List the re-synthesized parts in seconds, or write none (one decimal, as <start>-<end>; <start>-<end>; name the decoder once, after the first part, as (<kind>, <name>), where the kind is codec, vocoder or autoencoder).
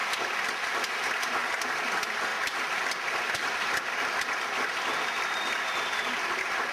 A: 2.3-6.3 (vocoder, BigVGAN v2)